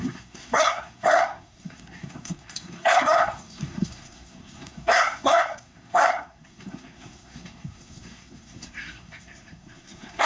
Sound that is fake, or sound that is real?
fake